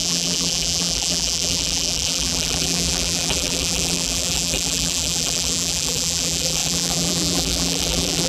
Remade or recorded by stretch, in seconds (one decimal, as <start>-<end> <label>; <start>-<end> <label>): 0.0-8.3 remade